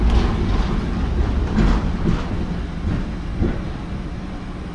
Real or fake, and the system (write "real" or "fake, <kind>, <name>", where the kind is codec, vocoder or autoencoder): real